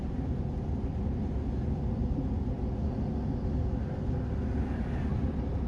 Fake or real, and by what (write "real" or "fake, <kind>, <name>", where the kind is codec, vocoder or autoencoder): real